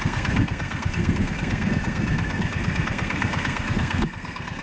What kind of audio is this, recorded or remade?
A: remade